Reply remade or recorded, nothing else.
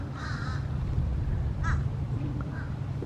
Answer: remade